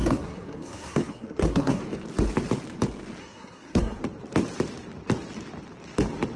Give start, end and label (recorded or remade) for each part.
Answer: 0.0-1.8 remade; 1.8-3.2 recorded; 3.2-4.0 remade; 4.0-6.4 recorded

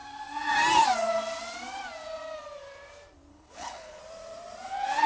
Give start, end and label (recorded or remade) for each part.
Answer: 0.0-3.3 recorded; 3.3-4.0 remade; 4.0-5.1 recorded

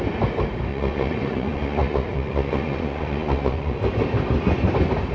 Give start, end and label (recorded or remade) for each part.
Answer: 0.0-0.7 recorded; 0.7-3.8 remade; 3.8-5.1 recorded

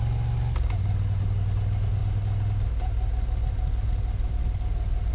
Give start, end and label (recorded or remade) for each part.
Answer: 0.0-5.1 recorded